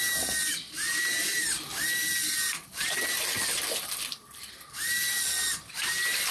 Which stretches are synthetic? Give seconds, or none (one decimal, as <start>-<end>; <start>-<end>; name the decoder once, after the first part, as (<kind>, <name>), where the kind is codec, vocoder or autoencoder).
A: none